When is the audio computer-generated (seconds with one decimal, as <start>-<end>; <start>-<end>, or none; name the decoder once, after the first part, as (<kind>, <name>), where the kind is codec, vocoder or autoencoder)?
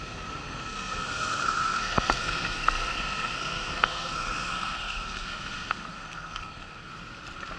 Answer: 0.0-6.9 (codec, SNAC)